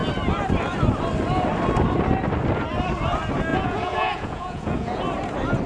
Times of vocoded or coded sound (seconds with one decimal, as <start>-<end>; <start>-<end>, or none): 3.5-5.0